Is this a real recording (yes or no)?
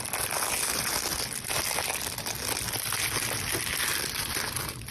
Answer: yes